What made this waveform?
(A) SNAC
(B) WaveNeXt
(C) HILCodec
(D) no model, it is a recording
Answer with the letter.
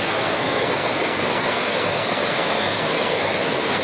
A